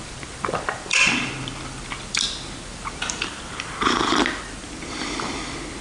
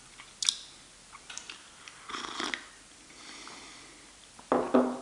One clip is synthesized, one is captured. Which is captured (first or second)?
second